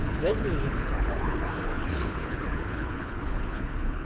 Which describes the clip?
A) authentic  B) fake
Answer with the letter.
B